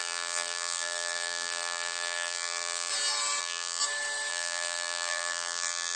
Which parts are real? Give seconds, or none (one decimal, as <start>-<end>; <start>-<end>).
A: 2.9-3.4; 3.8-4.3